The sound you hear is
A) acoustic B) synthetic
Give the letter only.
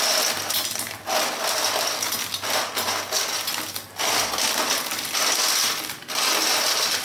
A